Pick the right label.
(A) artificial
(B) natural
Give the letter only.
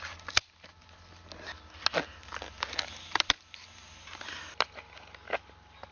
B